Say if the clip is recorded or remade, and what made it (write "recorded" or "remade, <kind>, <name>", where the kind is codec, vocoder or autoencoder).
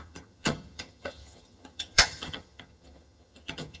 remade, vocoder, HiFi-GAN